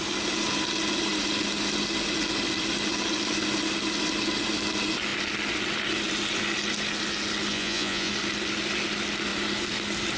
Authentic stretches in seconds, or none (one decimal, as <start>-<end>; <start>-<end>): 0.0-7.5; 8.1-10.2